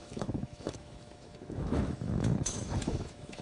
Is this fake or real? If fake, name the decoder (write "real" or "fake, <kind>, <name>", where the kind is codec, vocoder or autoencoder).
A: fake, autoencoder, DAC-VAE